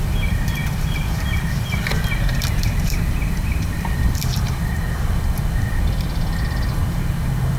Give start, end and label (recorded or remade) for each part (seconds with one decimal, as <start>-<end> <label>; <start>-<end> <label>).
0.0-0.6 recorded; 0.6-5.2 remade; 5.2-7.6 recorded